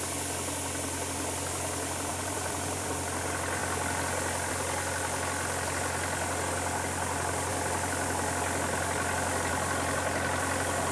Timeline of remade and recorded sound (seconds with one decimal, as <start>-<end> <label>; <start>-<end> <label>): 0.0-2.1 recorded; 2.1-3.0 remade; 3.0-10.9 recorded